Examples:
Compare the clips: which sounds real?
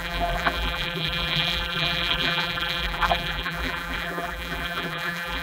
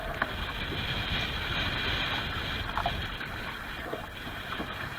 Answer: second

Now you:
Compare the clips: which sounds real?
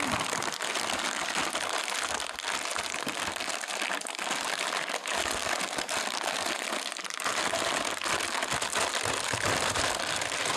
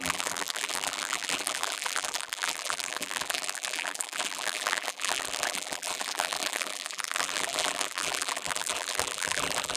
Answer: first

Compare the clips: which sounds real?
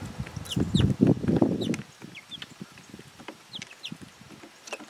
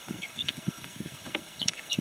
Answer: first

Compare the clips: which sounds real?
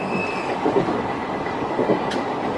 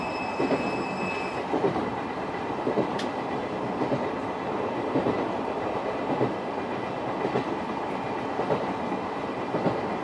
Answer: second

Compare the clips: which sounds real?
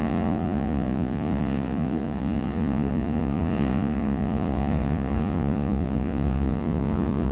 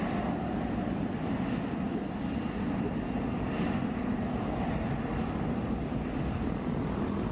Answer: second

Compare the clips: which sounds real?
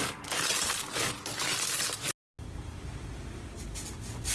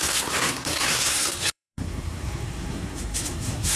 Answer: first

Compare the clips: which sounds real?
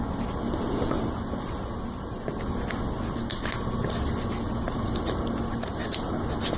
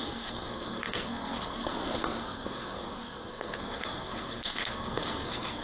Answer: first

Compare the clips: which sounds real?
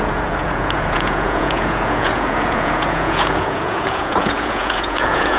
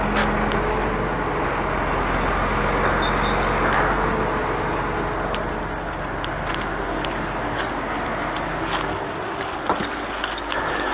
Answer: second